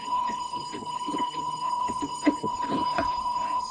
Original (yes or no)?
no